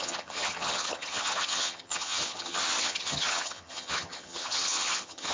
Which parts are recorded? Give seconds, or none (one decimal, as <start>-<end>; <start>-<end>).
none